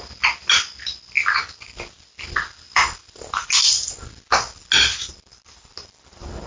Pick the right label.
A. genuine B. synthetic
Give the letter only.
A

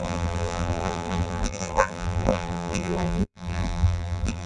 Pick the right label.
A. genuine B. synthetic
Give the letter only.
B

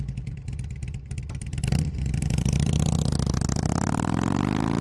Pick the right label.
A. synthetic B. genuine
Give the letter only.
A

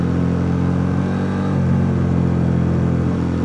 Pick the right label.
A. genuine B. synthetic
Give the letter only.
A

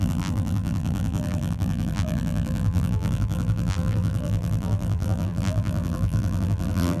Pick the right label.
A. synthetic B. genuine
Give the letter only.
A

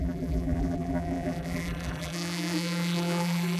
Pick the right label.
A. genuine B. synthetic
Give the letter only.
B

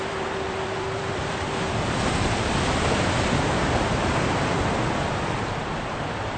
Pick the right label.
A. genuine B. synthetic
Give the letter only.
B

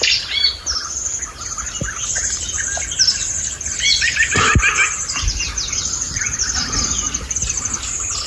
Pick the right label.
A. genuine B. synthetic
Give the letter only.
A